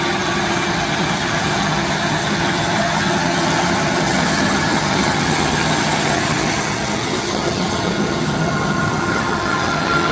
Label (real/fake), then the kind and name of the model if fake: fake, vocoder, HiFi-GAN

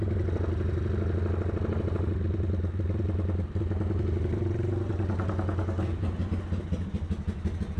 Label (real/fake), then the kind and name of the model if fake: real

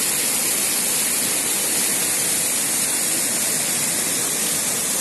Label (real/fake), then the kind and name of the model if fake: real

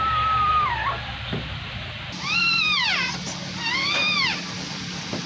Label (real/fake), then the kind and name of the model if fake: real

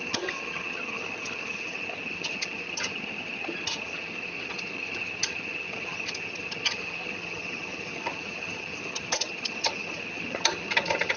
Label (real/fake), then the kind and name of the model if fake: fake, vocoder, HiFi-GAN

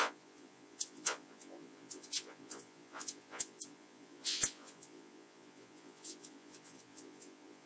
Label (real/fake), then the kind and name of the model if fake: fake, vocoder, Vocos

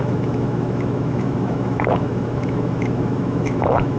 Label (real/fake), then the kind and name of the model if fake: fake, autoencoder, DAC-VAE